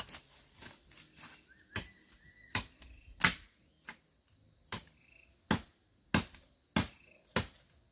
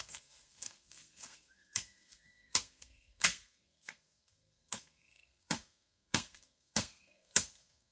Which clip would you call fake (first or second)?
second